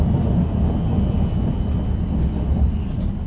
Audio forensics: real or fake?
real